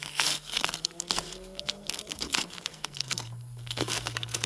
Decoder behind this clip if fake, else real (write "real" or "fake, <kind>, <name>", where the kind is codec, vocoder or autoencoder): fake, codec, SNAC